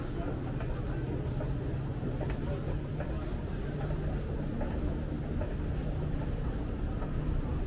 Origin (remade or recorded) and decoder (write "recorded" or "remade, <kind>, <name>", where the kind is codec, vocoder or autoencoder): recorded